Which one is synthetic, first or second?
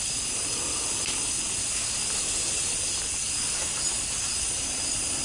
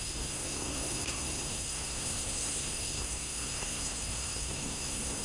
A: second